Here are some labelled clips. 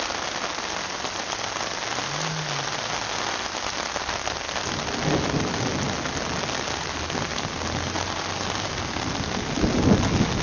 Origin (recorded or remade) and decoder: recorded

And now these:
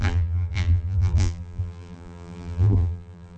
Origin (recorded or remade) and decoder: remade, vocoder, BigVGAN v2